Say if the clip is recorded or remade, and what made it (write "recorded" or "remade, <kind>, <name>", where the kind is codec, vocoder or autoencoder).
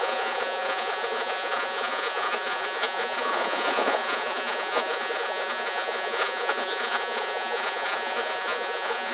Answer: remade, vocoder, Vocos